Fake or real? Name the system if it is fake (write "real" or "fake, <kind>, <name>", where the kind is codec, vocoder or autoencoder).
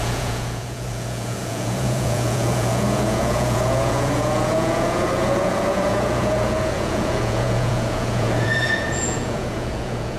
fake, vocoder, Vocos